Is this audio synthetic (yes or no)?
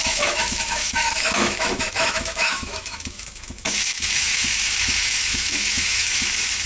yes